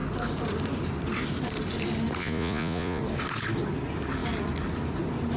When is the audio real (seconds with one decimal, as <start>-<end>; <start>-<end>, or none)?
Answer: 0.0-2.2; 3.0-5.4